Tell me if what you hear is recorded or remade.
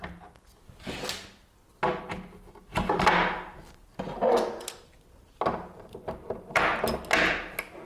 recorded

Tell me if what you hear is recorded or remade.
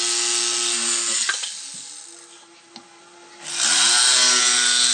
recorded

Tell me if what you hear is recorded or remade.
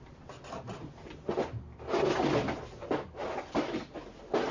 recorded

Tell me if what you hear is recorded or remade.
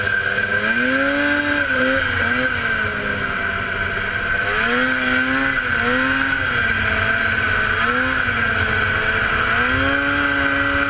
recorded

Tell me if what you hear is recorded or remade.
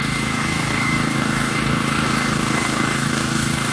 remade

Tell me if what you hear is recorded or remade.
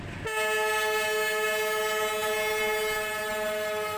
recorded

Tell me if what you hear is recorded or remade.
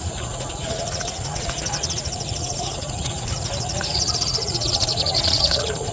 remade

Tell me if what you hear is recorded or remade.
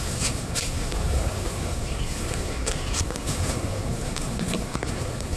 remade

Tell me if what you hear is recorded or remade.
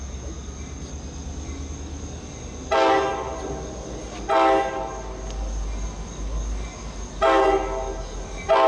recorded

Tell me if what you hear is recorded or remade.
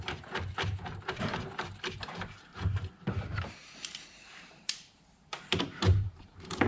remade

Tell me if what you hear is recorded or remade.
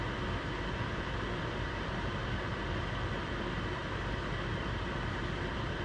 remade